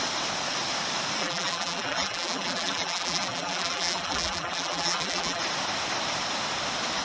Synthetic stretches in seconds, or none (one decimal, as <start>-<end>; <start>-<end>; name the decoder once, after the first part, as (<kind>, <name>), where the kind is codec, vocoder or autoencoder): 1.2-5.4 (vocoder, BigVGAN v2)